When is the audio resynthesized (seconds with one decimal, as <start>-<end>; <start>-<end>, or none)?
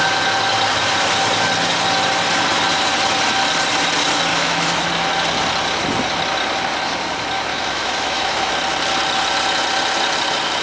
4.3-4.9; 7.5-8.5